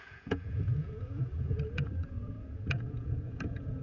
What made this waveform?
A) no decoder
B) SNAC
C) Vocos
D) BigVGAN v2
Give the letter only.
C